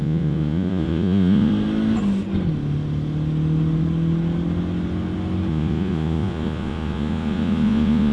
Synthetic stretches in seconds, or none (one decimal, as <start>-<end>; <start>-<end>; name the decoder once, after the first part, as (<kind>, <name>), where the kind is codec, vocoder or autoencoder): 0.0-1.5 (vocoder, Vocos); 5.5-8.1